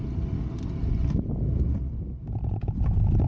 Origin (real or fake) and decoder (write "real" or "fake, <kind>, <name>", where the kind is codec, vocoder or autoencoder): real